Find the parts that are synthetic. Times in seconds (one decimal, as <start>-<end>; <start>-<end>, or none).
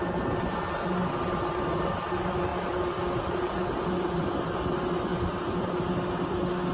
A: none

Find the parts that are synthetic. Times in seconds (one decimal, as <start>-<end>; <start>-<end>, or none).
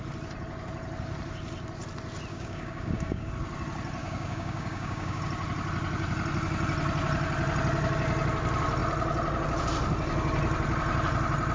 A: 2.3-3.3; 4.0-5.2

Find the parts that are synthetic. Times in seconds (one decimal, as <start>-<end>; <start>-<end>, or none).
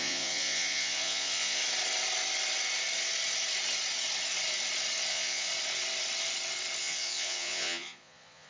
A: 0.0-1.6; 5.1-5.5; 6.8-8.5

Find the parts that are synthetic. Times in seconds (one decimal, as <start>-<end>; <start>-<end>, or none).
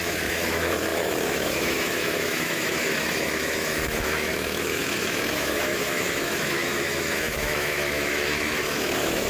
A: 0.0-9.3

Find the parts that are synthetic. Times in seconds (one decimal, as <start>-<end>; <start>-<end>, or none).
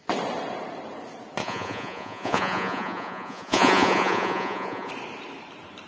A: 1.4-4.9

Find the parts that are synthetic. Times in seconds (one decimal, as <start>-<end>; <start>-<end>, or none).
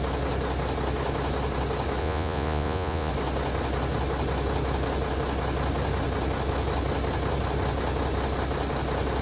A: 2.0-3.1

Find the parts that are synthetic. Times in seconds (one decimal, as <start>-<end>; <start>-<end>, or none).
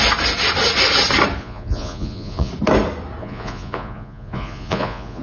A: 1.4-2.5; 3.2-5.2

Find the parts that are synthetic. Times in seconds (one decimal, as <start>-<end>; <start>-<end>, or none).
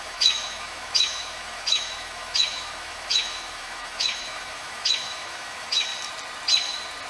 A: 0.0-5.9